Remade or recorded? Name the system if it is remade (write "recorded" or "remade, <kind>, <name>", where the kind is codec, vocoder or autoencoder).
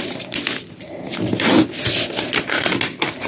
recorded